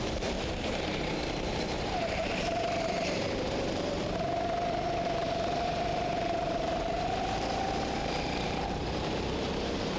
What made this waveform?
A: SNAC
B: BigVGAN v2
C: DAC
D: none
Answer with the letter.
B